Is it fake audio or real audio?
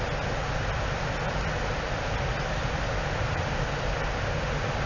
real